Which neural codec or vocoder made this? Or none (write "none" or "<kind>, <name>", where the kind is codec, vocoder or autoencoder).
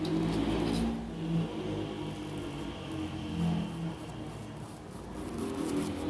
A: none